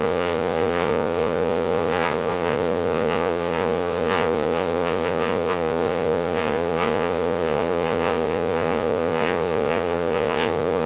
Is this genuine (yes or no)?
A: no